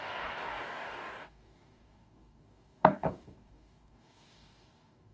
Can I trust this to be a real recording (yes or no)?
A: no